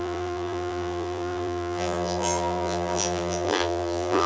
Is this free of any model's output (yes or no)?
no